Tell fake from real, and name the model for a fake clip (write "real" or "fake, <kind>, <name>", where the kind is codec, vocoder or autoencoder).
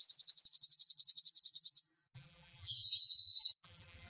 fake, vocoder, BigVGAN v2